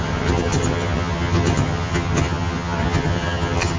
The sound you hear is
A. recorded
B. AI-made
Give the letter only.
B